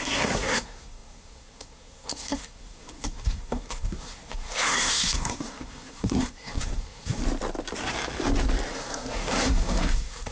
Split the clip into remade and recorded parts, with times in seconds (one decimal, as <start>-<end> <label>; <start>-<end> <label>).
0.0-7.2 remade; 7.2-8.7 recorded; 8.7-10.3 remade